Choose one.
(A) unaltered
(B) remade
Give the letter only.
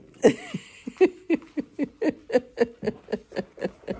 A